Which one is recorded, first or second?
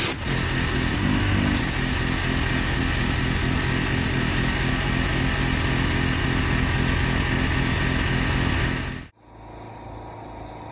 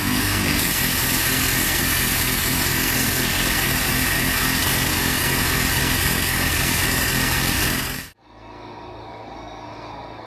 first